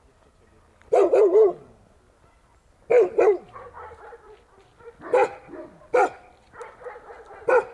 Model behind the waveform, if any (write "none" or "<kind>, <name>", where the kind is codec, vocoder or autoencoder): none